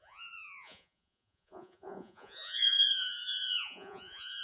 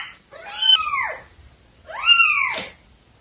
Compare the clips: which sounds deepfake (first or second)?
first